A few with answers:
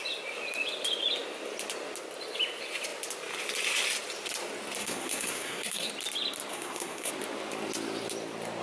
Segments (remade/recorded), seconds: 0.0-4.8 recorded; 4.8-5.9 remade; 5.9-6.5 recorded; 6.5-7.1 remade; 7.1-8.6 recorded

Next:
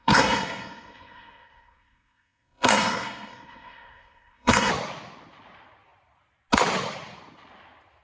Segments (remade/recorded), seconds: 0.0-4.7 remade; 4.7-8.0 recorded

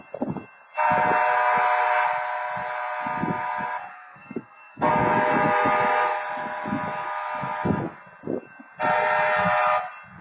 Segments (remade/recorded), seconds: 0.0-3.9 recorded; 3.9-4.9 remade; 4.9-10.2 recorded

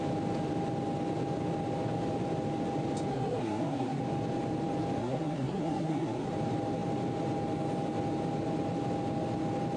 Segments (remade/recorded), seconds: 0.0-3.1 recorded; 3.1-4.0 remade; 4.0-5.0 recorded; 5.0-6.3 remade; 6.3-9.8 recorded

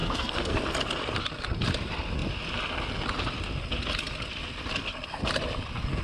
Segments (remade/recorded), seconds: 0.0-0.6 remade; 0.6-6.0 recorded